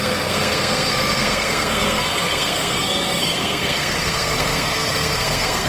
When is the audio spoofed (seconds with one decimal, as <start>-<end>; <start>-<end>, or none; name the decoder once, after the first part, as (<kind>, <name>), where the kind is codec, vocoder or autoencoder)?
0.0-5.7 (codec, SNAC)